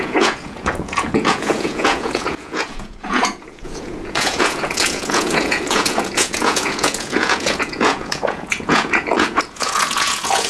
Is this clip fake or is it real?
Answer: fake